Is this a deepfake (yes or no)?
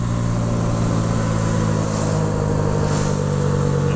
no